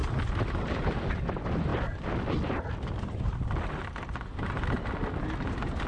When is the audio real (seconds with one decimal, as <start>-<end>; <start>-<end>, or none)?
1.1-1.7; 5.2-5.9